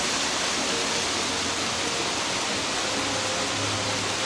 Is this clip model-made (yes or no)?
no